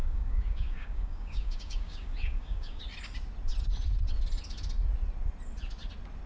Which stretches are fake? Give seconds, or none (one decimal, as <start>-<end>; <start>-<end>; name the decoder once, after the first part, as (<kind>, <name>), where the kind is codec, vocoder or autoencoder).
0.0-2.8 (codec, DAC)